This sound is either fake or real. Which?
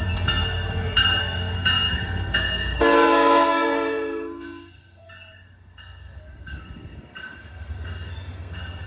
fake